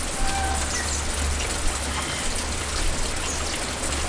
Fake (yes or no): no